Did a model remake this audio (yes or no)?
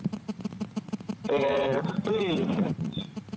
yes